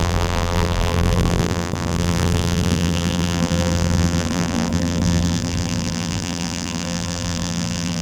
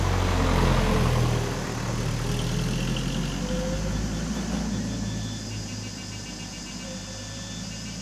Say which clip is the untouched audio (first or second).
second